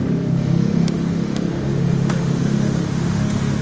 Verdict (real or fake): fake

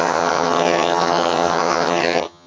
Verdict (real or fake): fake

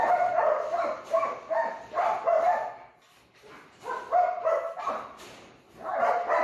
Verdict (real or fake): real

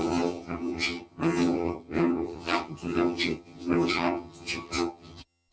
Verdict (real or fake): fake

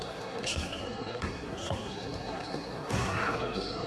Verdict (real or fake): fake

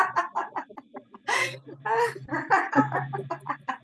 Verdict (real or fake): real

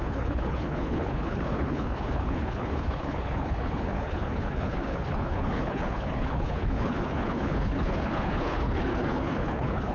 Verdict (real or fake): fake